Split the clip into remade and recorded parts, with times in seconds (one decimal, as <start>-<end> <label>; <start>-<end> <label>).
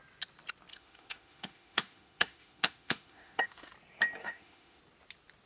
0.0-0.7 recorded; 0.7-3.7 remade; 3.7-4.2 recorded; 4.2-4.8 remade; 4.8-5.5 recorded